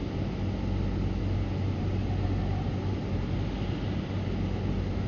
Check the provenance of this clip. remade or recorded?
recorded